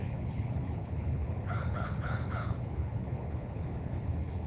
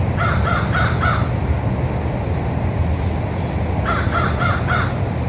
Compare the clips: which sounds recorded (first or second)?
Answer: second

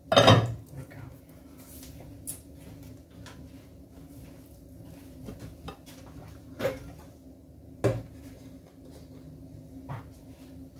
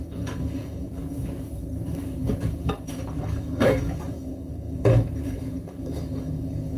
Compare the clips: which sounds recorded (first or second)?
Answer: first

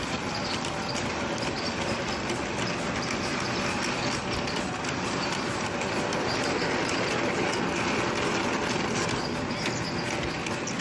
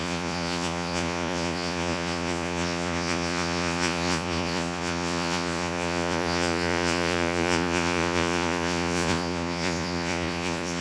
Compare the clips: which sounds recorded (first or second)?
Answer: first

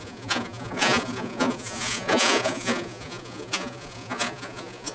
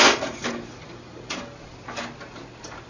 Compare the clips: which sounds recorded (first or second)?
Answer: second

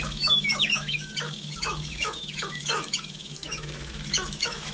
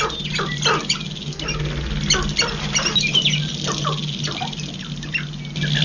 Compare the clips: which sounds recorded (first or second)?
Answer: second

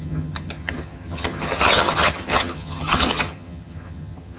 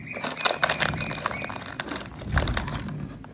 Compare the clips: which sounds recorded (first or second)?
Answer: second